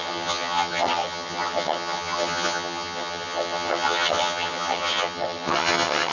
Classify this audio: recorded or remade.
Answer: remade